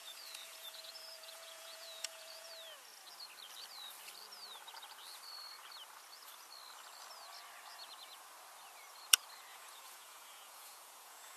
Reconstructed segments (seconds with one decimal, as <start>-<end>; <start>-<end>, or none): 0.0-2.5; 9.5-11.4